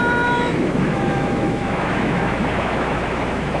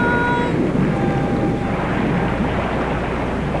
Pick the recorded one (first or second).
second